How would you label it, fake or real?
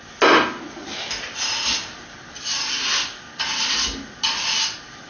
real